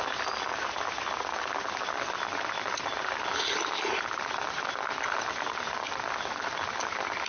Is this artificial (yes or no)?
no